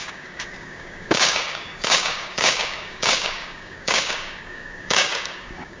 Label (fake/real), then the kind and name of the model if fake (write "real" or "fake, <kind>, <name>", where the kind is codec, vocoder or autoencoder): fake, codec, DAC